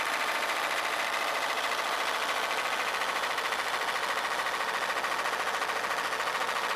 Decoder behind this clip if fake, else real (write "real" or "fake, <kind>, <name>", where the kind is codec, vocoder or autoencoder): real